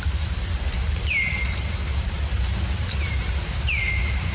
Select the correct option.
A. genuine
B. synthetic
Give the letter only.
B